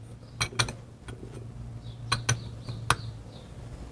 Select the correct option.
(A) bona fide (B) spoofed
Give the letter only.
A